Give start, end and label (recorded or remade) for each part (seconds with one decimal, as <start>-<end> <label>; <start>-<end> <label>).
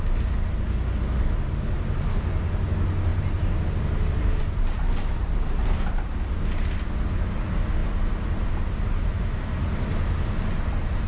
0.0-11.1 recorded